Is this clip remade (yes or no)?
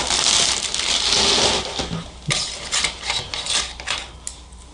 no